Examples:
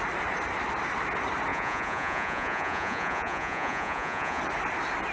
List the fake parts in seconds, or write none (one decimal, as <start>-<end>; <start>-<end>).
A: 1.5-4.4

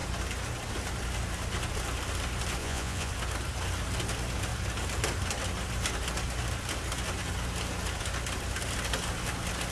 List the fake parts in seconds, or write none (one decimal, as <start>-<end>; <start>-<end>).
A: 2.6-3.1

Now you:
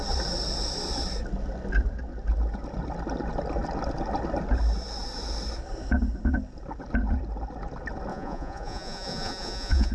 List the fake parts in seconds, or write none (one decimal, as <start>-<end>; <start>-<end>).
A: 8.1-9.9

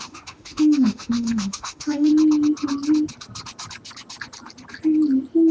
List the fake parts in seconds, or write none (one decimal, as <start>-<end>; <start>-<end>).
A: 0.0-2.1